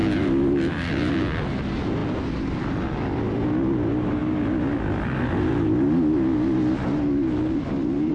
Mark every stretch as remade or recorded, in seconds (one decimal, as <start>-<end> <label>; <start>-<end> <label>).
0.0-8.1 recorded